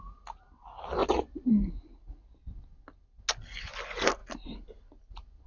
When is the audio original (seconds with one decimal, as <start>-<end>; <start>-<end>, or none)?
0.0-5.5

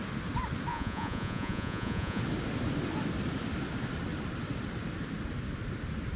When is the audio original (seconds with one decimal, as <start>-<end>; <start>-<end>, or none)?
0.0-0.7; 2.2-6.2

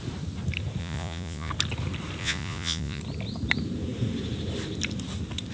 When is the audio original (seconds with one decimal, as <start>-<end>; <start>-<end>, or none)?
0.0-0.8; 1.5-2.2; 3.0-5.5

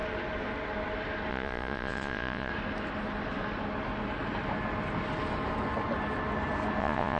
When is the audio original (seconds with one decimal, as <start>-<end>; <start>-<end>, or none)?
0.0-1.3; 2.5-6.8

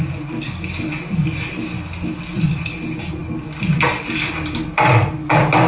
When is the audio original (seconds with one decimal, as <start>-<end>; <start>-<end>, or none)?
0.0-5.7

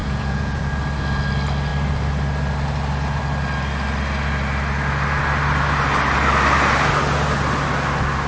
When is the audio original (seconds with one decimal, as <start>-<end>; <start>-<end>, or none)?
0.6-8.3